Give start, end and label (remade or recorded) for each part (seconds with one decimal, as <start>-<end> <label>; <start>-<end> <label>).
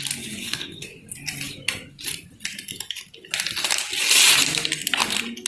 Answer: 0.0-0.4 recorded; 0.4-1.0 remade; 1.0-5.5 recorded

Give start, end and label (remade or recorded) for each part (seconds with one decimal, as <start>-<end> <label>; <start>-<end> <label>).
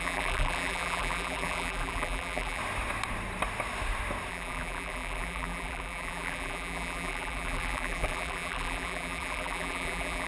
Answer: 0.0-2.6 remade; 2.6-4.3 recorded; 4.3-10.3 remade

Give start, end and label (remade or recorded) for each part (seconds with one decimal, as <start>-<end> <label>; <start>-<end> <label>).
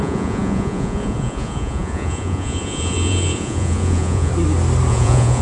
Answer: 0.0-4.3 remade; 4.3-4.9 recorded; 4.9-5.4 remade